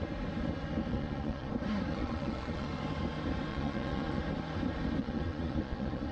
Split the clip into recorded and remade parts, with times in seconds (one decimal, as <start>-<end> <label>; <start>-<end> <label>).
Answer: 0.0-0.9 recorded; 0.9-1.5 remade; 1.5-1.9 recorded; 1.9-2.7 remade; 2.7-3.5 recorded; 3.5-4.2 remade; 4.2-5.0 recorded; 5.0-6.1 remade